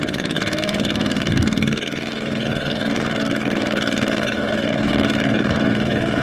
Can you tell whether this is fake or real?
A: fake